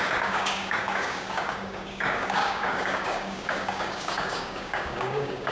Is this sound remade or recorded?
remade